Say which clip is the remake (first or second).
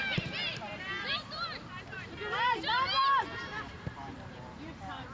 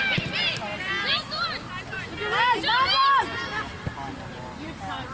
first